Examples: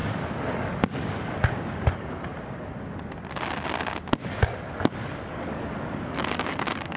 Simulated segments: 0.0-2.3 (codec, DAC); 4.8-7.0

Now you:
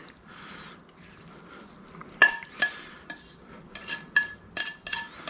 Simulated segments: none

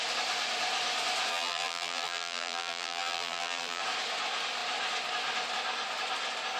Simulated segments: 1.3-3.8 (vocoder, BigVGAN v2)